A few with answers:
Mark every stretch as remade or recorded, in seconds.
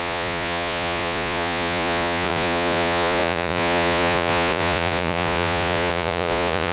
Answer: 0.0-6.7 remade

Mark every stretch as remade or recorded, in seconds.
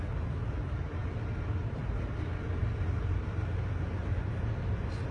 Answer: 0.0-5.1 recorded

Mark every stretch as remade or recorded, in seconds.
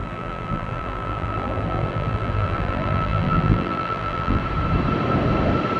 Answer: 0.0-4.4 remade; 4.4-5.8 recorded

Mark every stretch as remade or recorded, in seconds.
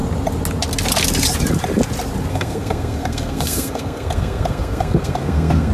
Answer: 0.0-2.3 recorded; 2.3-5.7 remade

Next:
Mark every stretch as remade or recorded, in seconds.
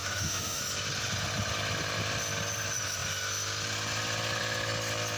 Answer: 0.0-0.6 remade; 0.6-5.2 recorded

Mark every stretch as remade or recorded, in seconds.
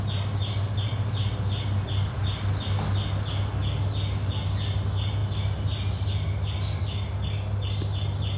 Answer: 0.0-8.4 recorded